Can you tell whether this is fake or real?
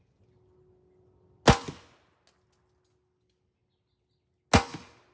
real